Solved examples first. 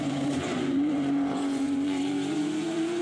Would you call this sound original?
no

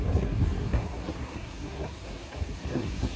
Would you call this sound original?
no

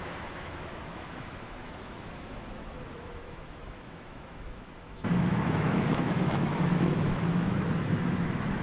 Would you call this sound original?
no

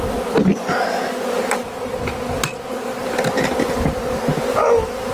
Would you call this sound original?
yes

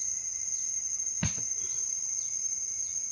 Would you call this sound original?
no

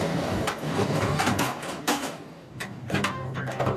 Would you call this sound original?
no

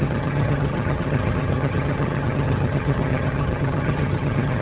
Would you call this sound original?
no